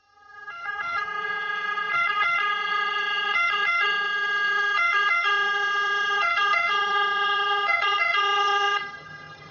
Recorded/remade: remade